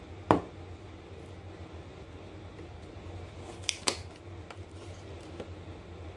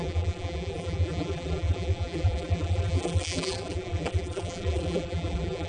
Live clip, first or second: first